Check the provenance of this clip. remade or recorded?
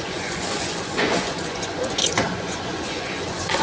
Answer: remade